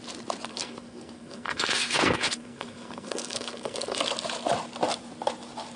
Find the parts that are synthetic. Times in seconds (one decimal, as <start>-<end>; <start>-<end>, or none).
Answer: 0.5-4.0